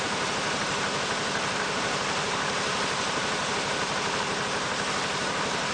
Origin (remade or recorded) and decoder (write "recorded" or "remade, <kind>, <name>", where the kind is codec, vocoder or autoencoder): remade, vocoder, BigVGAN v2